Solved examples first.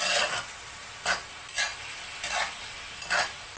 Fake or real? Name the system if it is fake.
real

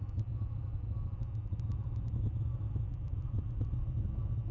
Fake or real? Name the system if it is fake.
real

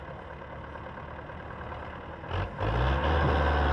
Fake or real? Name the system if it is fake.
real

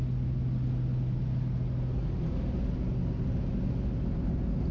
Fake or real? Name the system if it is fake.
real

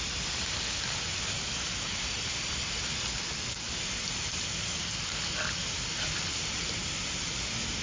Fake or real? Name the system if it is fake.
real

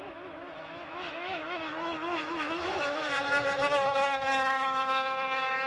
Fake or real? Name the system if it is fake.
fake, autoencoder, DAC-VAE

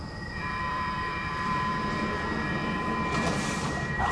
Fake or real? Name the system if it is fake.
fake, vocoder, BigVGAN v2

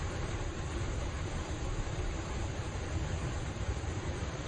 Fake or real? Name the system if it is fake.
fake, vocoder, BigVGAN v2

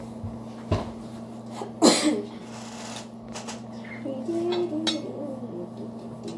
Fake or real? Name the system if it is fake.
real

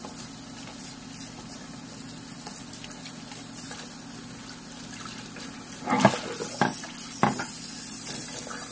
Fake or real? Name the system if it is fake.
real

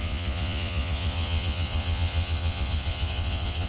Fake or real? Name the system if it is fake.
fake, vocoder, Vocos